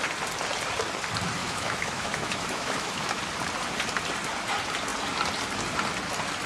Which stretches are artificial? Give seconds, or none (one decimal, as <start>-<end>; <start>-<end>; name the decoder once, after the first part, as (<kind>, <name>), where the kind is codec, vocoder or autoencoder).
1.4-3.2 (autoencoder, DAC-VAE)